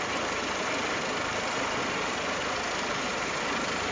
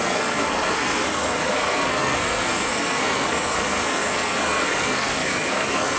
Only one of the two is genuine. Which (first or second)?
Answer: first